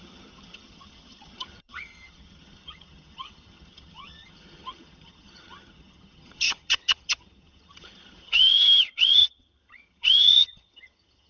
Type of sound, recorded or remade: remade